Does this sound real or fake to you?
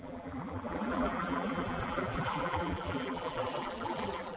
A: fake